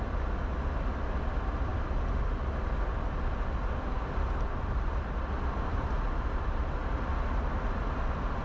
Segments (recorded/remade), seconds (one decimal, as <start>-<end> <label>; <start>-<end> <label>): 0.0-5.7 recorded; 5.7-7.0 remade; 7.0-8.4 recorded